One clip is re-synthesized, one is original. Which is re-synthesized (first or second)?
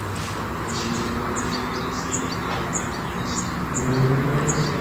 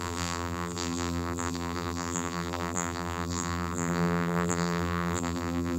second